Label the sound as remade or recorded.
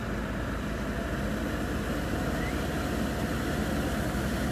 recorded